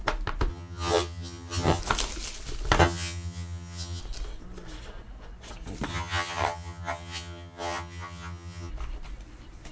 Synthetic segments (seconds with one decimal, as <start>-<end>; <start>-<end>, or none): 0.5-1.8; 2.8-4.0; 5.9-8.7